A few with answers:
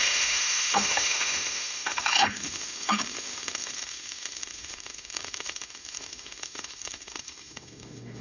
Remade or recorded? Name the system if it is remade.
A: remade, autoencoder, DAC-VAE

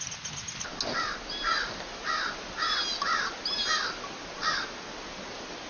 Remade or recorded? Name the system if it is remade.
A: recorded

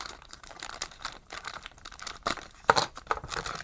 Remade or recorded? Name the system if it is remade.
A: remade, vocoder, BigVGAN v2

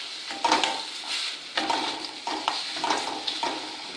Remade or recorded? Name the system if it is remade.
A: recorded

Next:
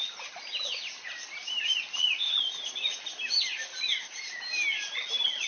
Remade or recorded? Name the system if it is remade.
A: recorded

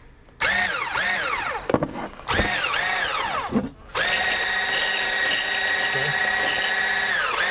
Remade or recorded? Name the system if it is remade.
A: recorded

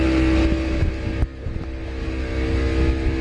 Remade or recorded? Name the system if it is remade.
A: recorded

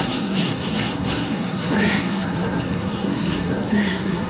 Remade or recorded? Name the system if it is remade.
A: remade, codec, SNAC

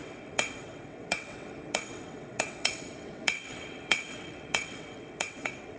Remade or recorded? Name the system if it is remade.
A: remade, vocoder, WaveNeXt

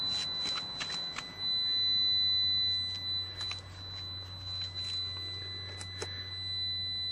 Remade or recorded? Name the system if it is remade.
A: recorded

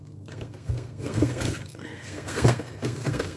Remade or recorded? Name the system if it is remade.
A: remade, codec, SNAC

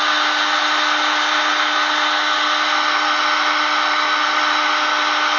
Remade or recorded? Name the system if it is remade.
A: recorded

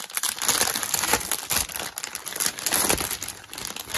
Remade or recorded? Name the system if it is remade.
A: recorded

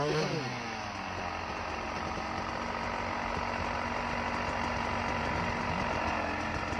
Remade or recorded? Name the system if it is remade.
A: recorded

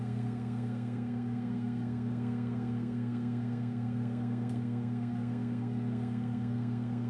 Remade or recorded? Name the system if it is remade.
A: remade, codec, SNAC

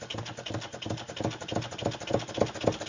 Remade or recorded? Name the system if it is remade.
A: recorded